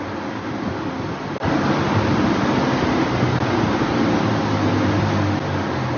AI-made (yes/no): no